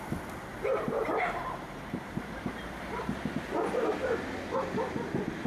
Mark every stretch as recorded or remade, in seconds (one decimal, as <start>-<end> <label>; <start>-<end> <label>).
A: 0.0-0.5 recorded; 0.5-2.6 remade; 2.6-5.5 recorded